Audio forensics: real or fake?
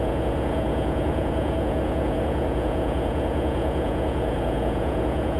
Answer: fake